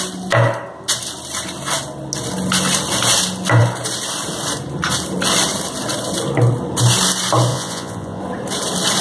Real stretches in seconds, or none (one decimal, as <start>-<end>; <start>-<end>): 0.0-7.5; 8.2-9.0